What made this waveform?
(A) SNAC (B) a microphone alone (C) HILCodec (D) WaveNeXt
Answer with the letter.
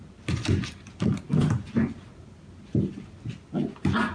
B